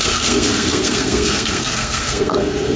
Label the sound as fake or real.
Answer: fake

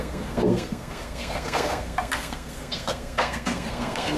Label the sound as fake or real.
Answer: fake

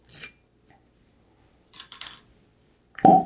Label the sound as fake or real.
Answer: fake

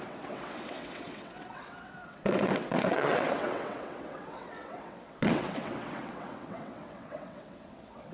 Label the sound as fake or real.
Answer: fake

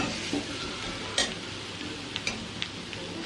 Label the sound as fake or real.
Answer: real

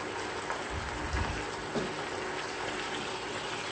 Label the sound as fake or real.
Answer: real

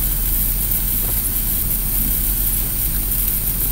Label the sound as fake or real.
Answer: real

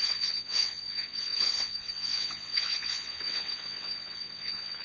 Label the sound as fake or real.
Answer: fake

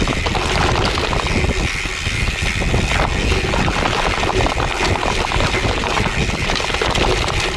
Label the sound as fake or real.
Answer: real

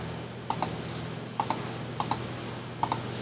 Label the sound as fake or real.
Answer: real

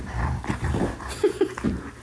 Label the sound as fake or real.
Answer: real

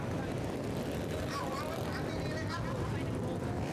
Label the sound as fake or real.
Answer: real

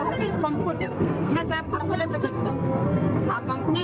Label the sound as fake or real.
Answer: fake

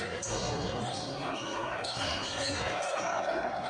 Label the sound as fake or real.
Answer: fake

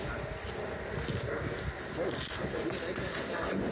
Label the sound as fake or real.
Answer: real